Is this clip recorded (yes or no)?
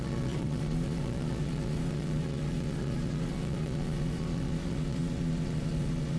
no